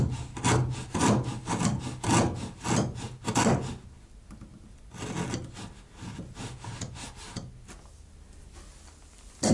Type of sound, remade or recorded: recorded